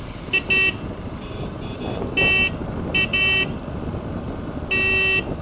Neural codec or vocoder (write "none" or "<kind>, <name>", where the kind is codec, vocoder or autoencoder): none